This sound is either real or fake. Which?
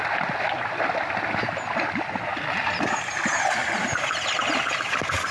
real